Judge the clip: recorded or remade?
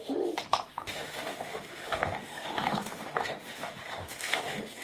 remade